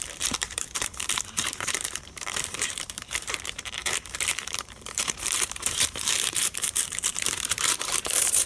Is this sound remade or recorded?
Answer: remade